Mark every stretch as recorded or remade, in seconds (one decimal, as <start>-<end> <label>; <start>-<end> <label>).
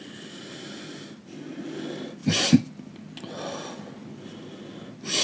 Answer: 0.0-2.2 recorded; 2.2-2.7 remade; 2.7-5.2 recorded